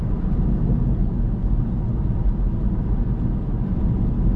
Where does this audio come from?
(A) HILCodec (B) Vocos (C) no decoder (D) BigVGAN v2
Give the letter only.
C